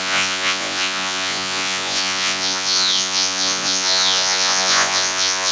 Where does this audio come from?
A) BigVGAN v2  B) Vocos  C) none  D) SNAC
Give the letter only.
B